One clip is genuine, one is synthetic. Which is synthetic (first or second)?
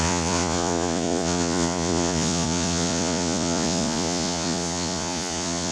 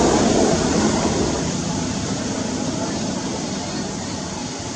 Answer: first